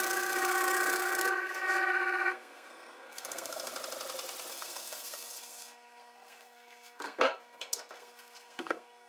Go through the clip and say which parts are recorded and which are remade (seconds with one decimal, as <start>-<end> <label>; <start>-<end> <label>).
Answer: 0.0-3.7 remade; 3.7-4.5 recorded; 4.5-9.1 remade